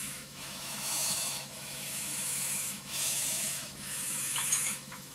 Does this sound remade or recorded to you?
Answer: remade